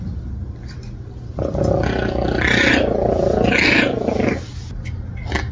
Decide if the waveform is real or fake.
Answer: real